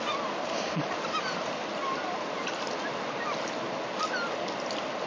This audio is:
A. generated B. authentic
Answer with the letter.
B